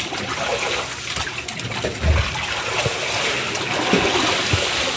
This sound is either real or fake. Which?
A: real